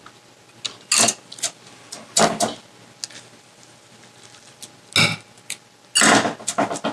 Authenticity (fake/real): real